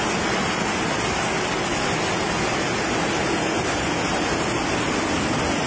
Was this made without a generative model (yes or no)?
yes